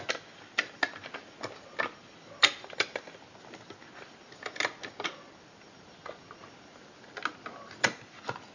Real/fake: real